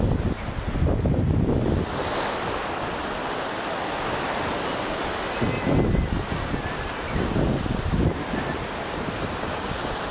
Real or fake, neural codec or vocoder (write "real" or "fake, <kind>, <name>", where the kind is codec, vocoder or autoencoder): real